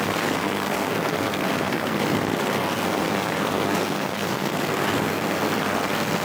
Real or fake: fake